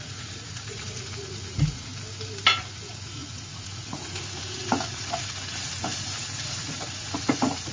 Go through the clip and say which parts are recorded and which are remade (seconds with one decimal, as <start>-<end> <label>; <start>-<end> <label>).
0.0-1.9 remade; 1.9-2.6 recorded; 2.6-7.7 remade